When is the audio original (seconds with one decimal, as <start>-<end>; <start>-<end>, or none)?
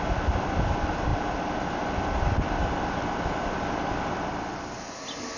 0.0-5.4